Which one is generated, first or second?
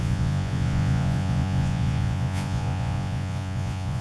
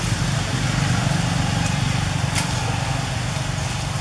first